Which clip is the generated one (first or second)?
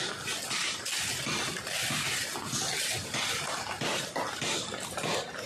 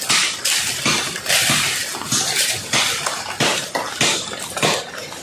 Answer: second